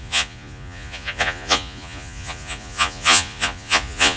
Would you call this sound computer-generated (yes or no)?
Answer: yes